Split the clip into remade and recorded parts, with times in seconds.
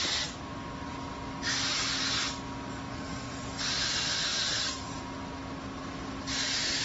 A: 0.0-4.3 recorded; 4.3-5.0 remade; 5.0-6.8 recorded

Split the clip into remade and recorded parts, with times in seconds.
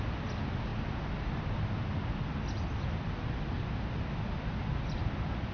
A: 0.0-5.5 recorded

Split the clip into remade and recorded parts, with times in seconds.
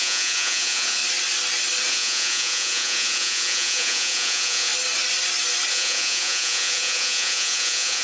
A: 0.0-1.0 remade; 1.0-1.9 recorded; 1.9-4.7 remade; 4.7-5.7 recorded; 5.7-8.0 remade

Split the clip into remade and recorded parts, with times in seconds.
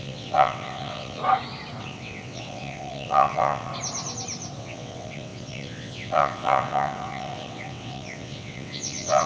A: 0.0-1.2 remade; 1.2-1.8 recorded; 1.8-3.7 remade; 3.7-4.6 recorded; 4.6-9.3 remade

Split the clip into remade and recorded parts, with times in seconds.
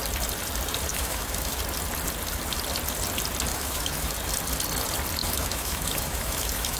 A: 0.0-0.9 recorded; 0.9-1.6 remade; 1.6-3.5 recorded; 3.5-4.1 remade; 4.1-5.2 recorded; 5.2-6.8 remade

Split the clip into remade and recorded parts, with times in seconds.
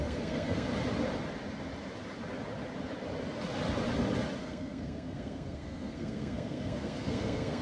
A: 0.0-0.7 remade; 0.7-4.4 recorded; 4.4-7.6 remade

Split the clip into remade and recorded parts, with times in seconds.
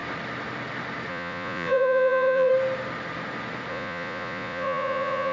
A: 0.0-1.1 recorded; 1.1-2.5 remade; 2.5-3.7 recorded; 3.7-5.3 remade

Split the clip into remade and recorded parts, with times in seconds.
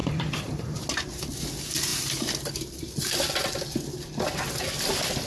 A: 0.0-0.8 remade; 0.8-5.3 recorded